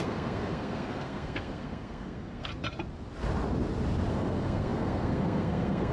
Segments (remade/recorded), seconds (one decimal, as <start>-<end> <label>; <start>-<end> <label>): 0.0-2.5 remade; 2.5-4.1 recorded; 4.1-5.9 remade